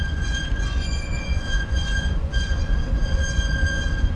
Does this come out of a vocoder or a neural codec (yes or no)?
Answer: yes